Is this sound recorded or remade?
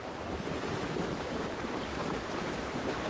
recorded